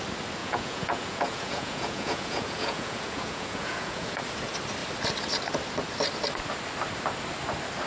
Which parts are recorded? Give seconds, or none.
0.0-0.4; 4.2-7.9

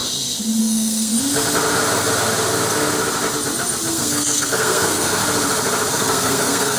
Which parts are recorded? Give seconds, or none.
0.0-0.6; 1.1-3.9; 5.2-5.9